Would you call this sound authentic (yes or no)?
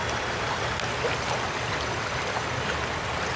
yes